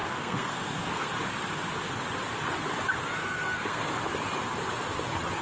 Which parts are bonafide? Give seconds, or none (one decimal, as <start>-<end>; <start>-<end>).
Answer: 1.1-3.2; 3.9-5.4